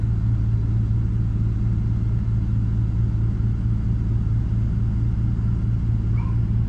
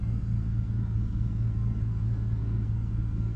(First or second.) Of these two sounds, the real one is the first